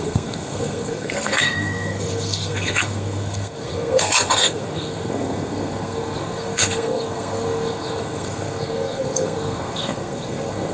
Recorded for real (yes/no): no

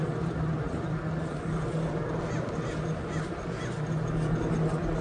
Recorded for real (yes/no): yes